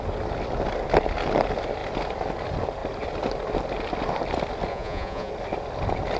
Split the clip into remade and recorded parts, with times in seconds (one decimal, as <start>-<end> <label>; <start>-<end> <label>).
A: 0.0-4.7 recorded; 4.7-5.3 remade; 5.3-6.2 recorded